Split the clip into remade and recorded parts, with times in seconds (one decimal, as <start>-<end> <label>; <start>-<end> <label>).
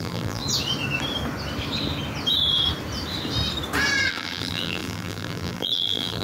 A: 0.0-0.4 remade; 0.4-4.1 recorded; 4.1-6.2 remade